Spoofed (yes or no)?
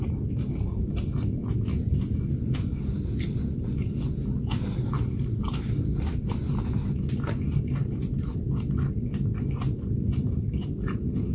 no